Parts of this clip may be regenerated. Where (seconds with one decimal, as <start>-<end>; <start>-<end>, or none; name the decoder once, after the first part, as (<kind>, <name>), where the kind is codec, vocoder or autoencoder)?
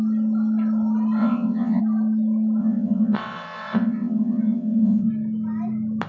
1.2-1.8 (vocoder, WaveNeXt); 2.6-5.1